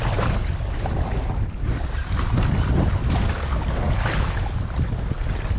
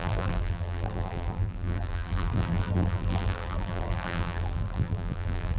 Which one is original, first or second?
first